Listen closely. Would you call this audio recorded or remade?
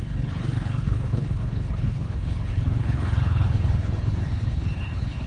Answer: remade